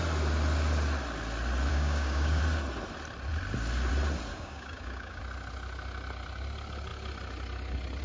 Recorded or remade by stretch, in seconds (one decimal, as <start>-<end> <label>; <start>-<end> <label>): 0.0-1.7 recorded; 1.7-2.4 remade; 2.4-4.3 recorded; 4.3-5.2 remade; 5.2-8.0 recorded